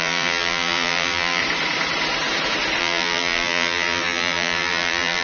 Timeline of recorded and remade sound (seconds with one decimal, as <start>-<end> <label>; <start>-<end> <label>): 0.0-1.4 remade; 1.4-2.8 recorded; 2.8-5.2 remade

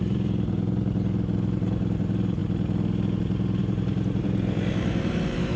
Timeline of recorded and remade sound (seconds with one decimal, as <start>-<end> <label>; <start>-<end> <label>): 0.0-2.4 remade; 2.4-3.2 recorded; 3.2-5.6 remade